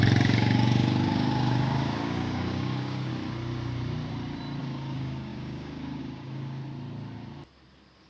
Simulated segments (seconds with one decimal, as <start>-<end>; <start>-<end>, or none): 0.0-3.1; 4.6-6.6